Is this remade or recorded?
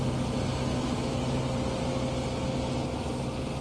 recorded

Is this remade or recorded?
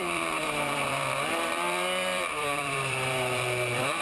remade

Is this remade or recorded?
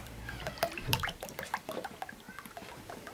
remade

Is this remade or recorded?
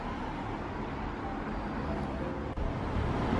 recorded